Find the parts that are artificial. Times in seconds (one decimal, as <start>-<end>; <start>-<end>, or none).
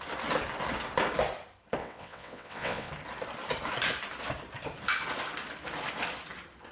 1.8-2.9